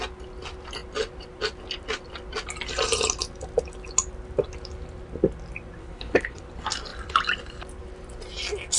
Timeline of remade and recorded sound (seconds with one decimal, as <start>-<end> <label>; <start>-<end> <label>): 0.0-5.8 recorded; 5.8-6.4 remade; 6.4-8.8 recorded